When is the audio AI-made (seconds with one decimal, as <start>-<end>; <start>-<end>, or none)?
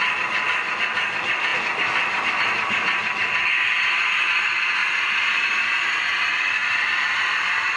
none